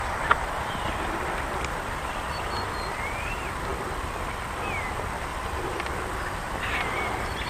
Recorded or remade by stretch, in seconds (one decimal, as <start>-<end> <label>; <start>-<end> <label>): 0.0-5.3 remade; 5.3-6.6 recorded; 6.6-7.5 remade